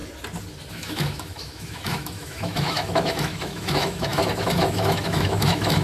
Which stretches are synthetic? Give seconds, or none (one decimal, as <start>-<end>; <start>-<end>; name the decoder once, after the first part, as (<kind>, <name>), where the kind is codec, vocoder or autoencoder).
0.7-5.8 (autoencoder, DAC-VAE)